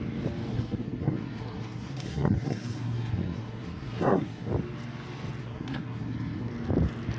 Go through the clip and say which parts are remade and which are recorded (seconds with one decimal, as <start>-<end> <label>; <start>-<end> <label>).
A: 0.0-0.5 recorded; 0.5-4.5 remade; 4.5-5.4 recorded; 5.4-6.5 remade; 6.5-7.2 recorded

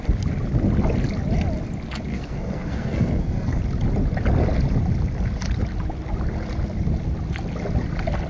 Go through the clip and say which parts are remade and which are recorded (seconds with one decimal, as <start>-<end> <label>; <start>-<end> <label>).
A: 0.0-2.1 recorded; 2.1-3.6 remade; 3.6-8.3 recorded

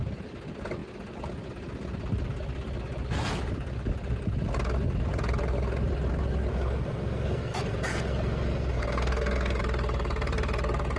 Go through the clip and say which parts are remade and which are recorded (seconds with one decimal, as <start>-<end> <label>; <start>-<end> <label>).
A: 0.0-6.5 recorded; 6.5-9.6 remade; 9.6-11.0 recorded

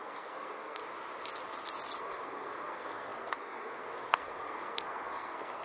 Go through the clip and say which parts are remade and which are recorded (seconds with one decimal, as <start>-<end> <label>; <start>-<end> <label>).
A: 0.0-0.8 remade; 0.8-2.0 recorded; 2.0-5.6 remade